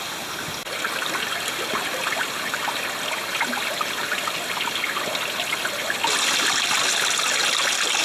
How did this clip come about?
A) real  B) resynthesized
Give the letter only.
A